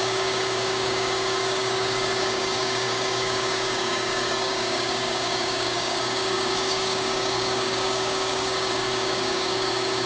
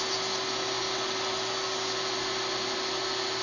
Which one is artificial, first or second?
first